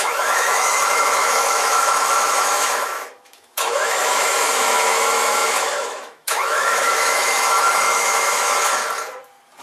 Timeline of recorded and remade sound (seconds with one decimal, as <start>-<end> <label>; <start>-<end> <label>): 0.0-8.8 remade; 8.8-9.6 recorded